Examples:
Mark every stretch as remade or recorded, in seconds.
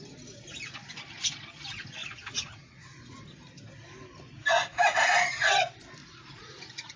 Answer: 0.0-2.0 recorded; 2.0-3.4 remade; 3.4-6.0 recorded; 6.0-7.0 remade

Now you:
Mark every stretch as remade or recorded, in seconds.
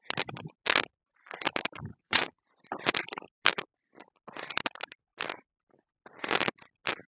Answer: 0.0-1.9 recorded; 1.9-2.4 remade; 2.4-7.1 recorded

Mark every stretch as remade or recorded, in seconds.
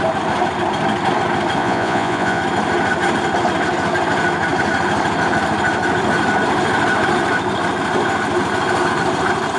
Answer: 0.0-1.6 recorded; 1.6-2.4 remade; 2.4-9.6 recorded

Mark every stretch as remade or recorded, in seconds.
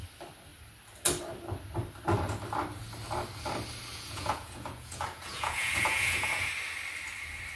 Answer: 0.0-3.9 recorded; 3.9-6.5 remade; 6.5-7.6 recorded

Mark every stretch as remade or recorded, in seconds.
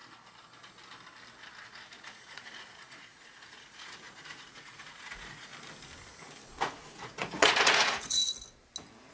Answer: 0.0-1.6 recorded; 1.6-5.5 remade; 5.5-6.6 recorded; 6.6-8.2 remade; 8.2-9.1 recorded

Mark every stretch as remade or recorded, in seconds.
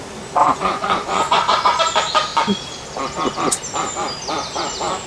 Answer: 0.0-0.4 recorded; 0.4-1.8 remade; 1.8-5.1 recorded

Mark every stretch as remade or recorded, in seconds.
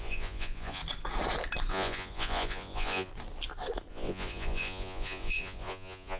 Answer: 0.0-0.8 remade; 0.8-1.7 recorded; 1.7-3.1 remade; 3.1-3.9 recorded; 3.9-6.2 remade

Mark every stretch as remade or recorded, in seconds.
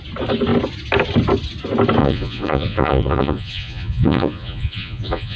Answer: 0.0-2.0 recorded; 2.0-5.4 remade